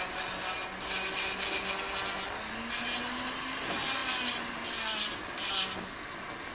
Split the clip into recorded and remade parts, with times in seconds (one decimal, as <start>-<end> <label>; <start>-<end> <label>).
0.0-6.5 recorded